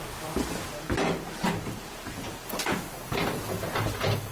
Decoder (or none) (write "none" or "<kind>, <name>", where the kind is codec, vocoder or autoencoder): none